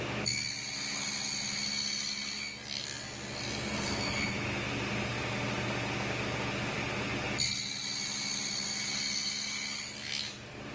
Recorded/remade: recorded